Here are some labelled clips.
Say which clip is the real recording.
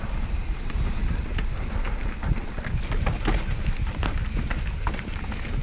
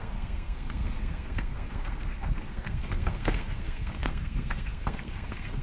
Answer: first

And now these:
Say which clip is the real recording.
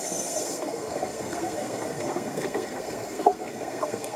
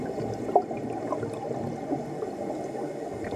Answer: second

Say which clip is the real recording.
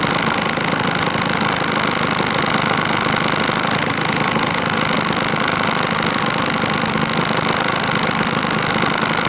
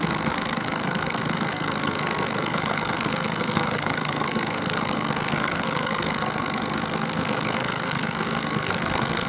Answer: first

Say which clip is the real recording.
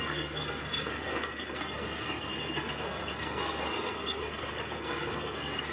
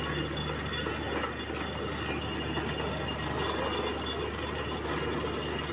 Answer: second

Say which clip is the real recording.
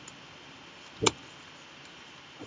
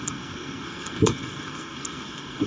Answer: first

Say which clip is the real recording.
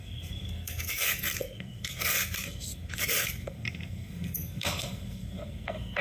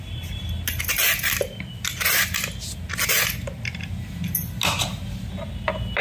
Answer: second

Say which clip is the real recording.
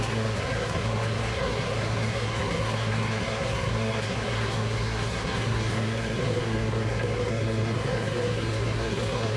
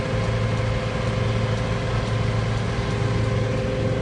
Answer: second